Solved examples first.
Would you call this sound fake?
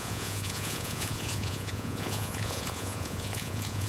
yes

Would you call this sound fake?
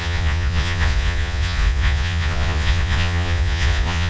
yes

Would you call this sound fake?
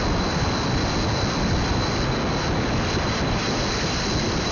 no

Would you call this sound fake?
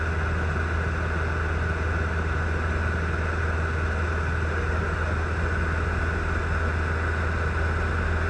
no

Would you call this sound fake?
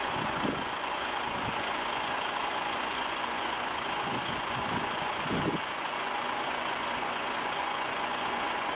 yes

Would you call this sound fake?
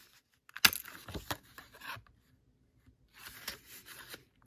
no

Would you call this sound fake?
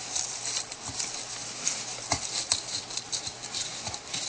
no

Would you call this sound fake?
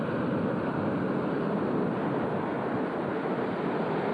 no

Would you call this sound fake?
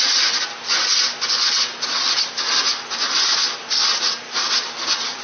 no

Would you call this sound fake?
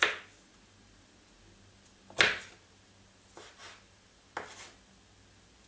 no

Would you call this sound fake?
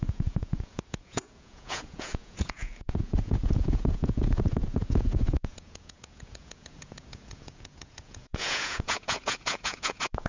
yes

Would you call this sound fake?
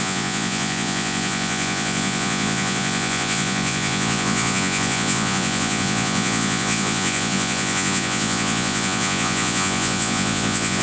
yes